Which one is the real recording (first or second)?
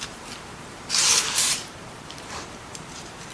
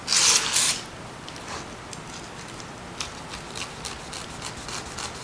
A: second